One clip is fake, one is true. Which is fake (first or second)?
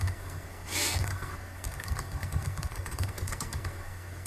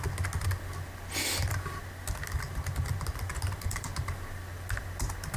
first